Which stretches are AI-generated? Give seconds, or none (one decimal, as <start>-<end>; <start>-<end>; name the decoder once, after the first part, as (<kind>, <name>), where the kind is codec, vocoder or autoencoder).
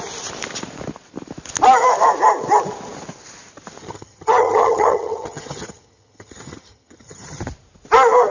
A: 3.8-7.4 (vocoder, HiFi-GAN)